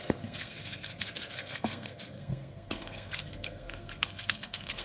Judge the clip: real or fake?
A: fake